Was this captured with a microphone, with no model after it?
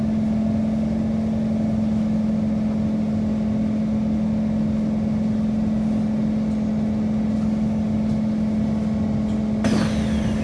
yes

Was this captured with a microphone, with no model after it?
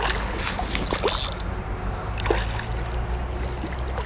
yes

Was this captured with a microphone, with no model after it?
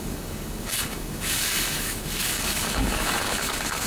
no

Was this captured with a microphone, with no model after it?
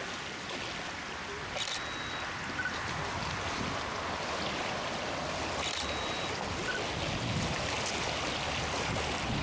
yes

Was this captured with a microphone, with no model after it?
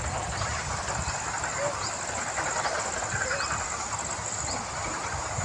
yes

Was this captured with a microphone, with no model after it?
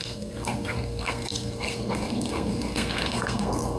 no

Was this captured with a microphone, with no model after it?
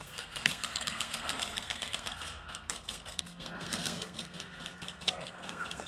no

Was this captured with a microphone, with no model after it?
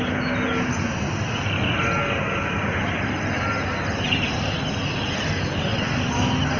yes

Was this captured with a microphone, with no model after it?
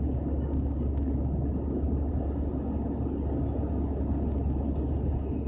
yes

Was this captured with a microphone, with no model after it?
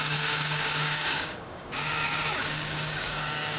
no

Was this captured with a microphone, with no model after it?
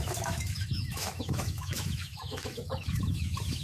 no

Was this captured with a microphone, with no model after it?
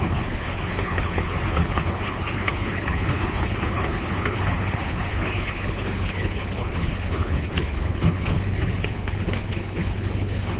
no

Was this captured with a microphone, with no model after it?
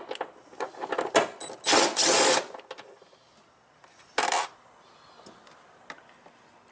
yes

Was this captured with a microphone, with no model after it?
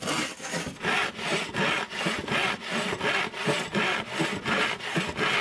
yes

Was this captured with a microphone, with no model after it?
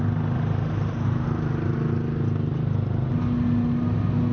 yes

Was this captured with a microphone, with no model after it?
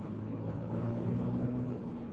no